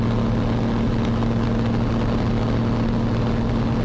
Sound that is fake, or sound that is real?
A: real